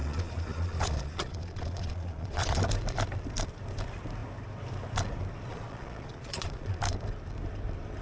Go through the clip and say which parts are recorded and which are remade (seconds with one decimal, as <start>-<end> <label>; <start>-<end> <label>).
0.0-2.6 remade; 2.6-5.5 recorded; 5.5-6.8 remade; 6.8-8.0 recorded